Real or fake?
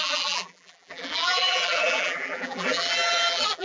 fake